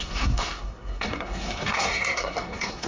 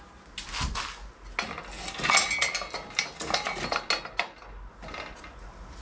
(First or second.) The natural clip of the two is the second